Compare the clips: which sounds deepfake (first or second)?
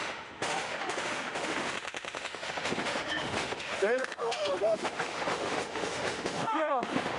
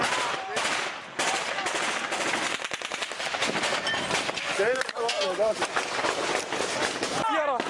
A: first